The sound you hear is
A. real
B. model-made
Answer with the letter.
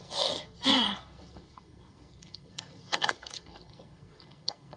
B